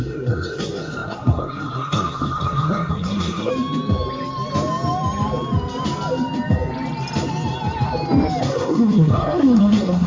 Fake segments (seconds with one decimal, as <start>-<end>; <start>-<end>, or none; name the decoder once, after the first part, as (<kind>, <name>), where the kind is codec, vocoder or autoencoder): 0.0-3.5 (codec, SNAC); 8.4-10.1